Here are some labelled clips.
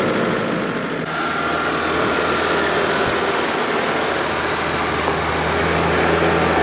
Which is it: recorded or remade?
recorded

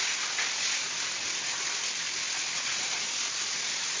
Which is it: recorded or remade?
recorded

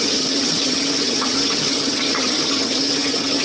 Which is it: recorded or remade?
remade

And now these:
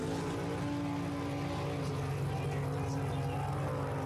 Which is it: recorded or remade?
recorded